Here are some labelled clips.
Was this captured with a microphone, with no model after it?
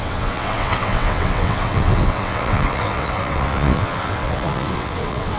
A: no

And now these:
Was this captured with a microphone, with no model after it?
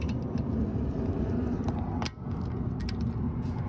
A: yes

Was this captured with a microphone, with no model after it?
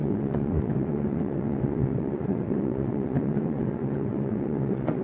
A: no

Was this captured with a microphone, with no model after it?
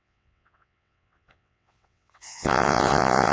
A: no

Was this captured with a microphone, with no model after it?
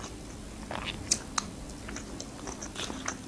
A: yes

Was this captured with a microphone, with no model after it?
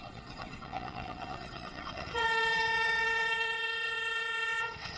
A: no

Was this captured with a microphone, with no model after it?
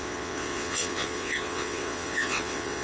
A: no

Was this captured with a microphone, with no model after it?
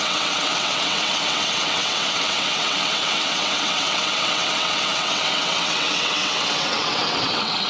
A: no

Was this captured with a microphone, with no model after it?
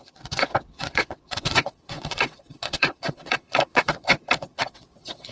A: no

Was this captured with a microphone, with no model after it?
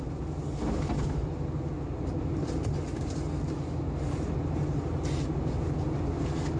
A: yes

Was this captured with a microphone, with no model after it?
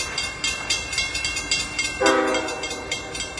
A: yes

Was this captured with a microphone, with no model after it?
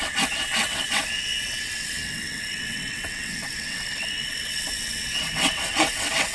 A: no